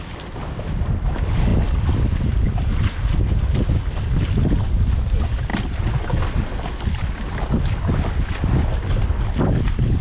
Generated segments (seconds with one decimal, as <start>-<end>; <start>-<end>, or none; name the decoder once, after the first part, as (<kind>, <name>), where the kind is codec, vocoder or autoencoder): none